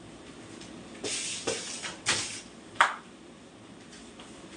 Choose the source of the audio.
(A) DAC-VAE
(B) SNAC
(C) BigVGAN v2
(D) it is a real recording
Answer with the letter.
D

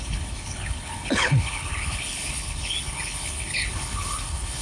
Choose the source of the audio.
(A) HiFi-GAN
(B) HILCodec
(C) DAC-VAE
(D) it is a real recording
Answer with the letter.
B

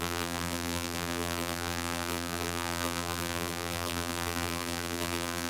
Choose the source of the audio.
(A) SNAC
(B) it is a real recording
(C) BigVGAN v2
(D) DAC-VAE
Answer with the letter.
C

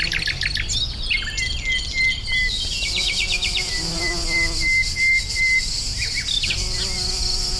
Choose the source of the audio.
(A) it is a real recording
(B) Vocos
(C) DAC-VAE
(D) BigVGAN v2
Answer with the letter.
A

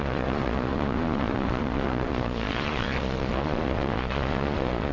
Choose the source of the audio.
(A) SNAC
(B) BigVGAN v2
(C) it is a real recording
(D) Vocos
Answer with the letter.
D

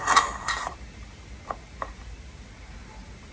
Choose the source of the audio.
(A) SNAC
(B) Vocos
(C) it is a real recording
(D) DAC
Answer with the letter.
C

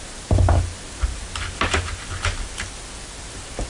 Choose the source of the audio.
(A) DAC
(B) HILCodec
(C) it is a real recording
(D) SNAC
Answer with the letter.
C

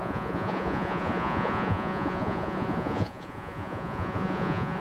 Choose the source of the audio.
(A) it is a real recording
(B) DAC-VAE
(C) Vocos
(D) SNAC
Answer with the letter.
C